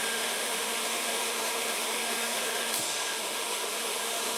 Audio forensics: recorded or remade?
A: remade